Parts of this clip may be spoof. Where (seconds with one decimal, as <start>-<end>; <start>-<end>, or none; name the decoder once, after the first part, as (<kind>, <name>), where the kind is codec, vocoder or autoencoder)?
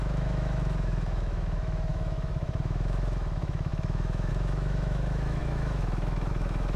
0.0-6.8 (autoencoder, DAC-VAE)